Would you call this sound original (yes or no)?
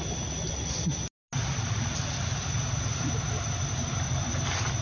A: yes